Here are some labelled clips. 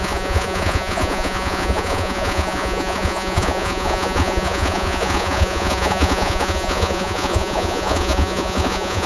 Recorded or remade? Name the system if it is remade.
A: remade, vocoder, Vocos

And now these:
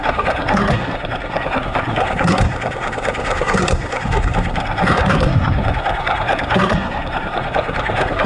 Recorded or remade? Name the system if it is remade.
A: remade, codec, SNAC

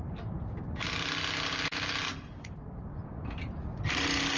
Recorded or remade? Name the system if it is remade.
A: recorded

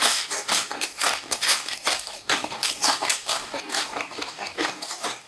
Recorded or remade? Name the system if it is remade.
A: remade, codec, DAC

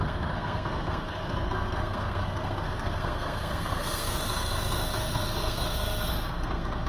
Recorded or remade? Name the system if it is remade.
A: remade, codec, SNAC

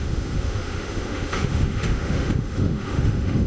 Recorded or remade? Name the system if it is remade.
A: remade, autoencoder, DAC-VAE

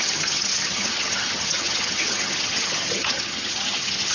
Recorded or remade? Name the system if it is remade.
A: remade, vocoder, HiFi-GAN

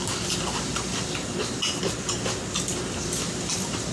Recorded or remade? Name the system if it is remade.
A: recorded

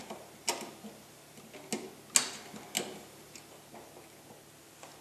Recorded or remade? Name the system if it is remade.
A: recorded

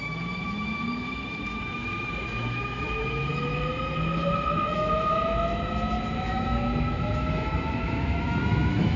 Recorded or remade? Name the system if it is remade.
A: remade, autoencoder, DAC-VAE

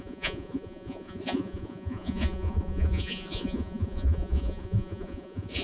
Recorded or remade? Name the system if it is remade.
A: remade, vocoder, Vocos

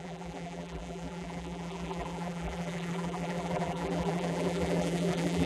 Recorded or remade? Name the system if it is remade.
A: remade, vocoder, BigVGAN v2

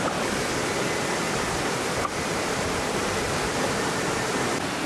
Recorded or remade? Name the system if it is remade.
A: recorded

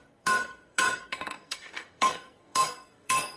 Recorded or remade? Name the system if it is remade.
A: remade, codec, SNAC